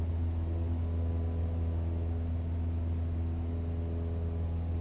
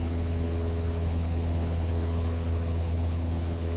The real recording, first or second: first